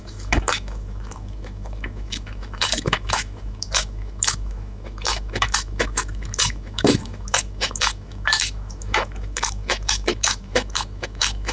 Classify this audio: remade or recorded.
remade